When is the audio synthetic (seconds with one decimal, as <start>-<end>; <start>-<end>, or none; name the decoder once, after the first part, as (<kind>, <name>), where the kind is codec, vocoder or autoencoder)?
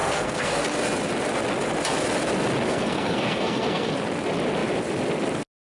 0.0-0.6 (codec, SNAC); 2.7-3.9